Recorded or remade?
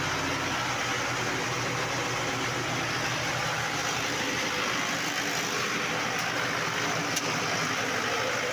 recorded